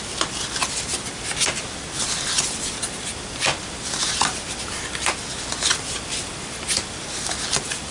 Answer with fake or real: real